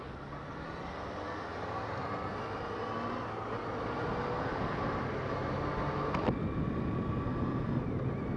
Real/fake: real